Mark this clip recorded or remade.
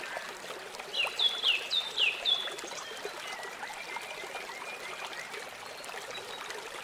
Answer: remade